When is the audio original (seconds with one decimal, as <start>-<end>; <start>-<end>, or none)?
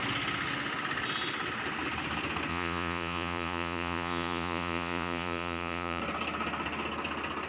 0.0-2.5; 6.0-7.5